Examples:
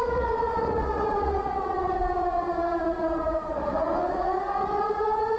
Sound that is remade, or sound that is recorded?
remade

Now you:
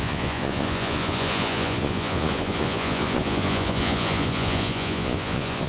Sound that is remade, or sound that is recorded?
remade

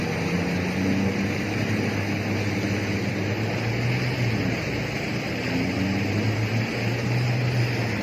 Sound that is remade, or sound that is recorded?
recorded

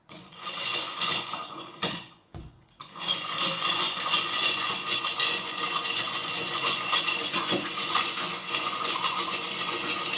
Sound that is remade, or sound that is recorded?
remade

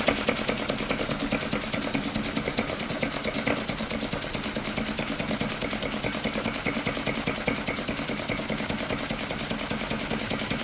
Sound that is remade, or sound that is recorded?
recorded